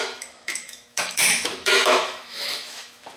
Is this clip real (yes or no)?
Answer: no